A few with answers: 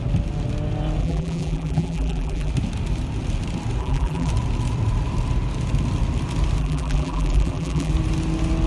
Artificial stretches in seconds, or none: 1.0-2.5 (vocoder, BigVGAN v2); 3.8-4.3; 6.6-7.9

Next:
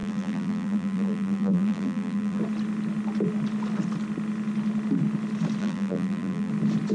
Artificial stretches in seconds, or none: 0.0-2.4 (vocoder, BigVGAN v2); 5.6-6.5

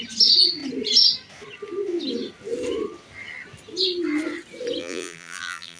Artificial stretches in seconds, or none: 4.8-5.8 (vocoder, BigVGAN v2)

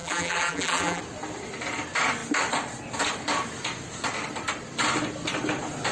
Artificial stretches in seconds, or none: 0.0-1.0 (vocoder, BigVGAN v2)

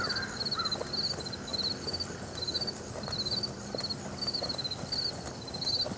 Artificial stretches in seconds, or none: 1.5-4.8 (vocoder, BigVGAN v2)

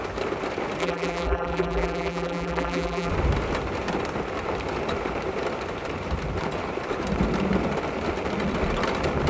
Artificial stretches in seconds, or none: 0.8-3.1 (vocoder, BigVGAN v2)

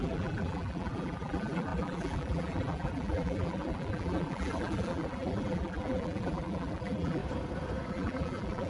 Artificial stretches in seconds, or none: 0.0-7.2 (vocoder, BigVGAN v2); 7.9-8.7

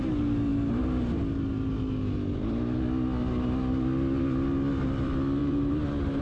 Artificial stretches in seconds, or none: 5.4-6.2 (vocoder, BigVGAN v2)